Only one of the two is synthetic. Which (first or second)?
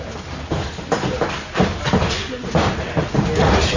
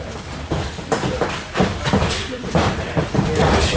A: second